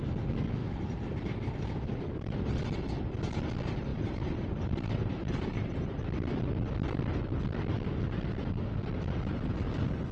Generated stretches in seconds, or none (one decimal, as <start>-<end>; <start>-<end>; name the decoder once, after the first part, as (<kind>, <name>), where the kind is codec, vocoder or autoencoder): 0.6-2.6 (vocoder, BigVGAN v2); 3.9-6.0

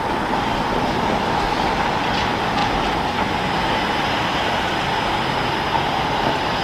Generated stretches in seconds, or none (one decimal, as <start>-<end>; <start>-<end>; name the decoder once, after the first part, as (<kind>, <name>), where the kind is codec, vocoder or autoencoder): none